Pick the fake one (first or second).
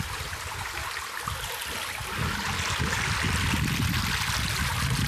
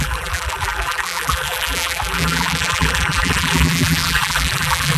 second